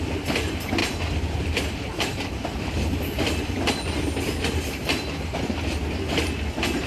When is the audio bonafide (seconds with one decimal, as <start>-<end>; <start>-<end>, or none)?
0.0-0.8; 3.5-6.9